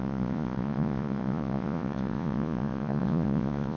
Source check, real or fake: fake